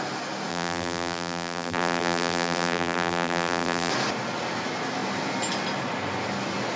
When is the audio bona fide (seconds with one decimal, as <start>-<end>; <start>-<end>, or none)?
0.0-0.5; 3.9-6.8